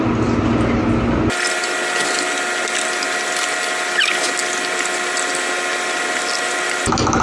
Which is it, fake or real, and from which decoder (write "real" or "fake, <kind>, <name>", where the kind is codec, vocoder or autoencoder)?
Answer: real